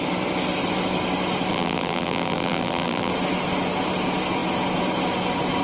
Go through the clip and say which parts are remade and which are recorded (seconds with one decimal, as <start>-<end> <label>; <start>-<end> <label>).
0.0-1.5 recorded; 1.5-3.1 remade; 3.1-5.6 recorded